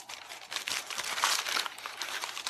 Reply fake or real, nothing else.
real